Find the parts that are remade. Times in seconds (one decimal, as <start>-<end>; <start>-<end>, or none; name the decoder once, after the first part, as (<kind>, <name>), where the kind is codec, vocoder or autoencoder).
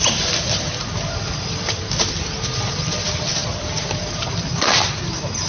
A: none